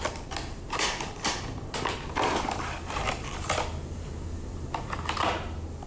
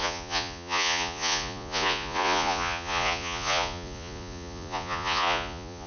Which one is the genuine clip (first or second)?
first